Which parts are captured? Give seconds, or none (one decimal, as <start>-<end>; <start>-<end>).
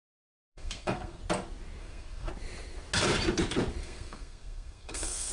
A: 1.2-1.8; 2.3-3.8